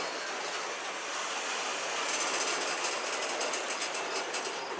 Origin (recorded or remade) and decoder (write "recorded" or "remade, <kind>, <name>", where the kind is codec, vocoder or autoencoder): recorded